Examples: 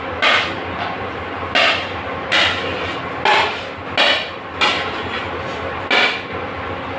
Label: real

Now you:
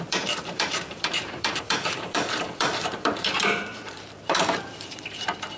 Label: fake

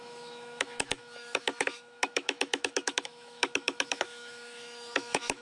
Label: fake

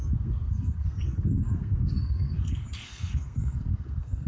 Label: fake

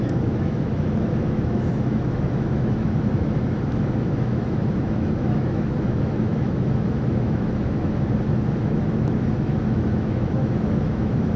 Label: fake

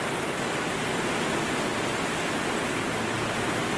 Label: real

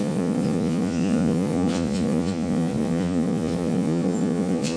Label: fake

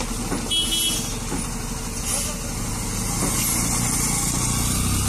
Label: real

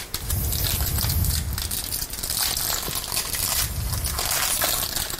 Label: real